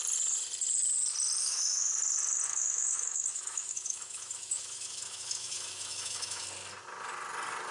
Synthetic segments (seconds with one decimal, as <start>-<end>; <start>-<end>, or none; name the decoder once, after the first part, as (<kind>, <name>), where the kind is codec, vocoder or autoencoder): 1.4-1.9 (autoencoder, DAC-VAE); 2.5-6.4